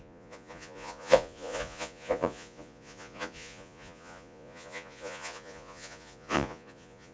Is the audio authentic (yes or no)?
no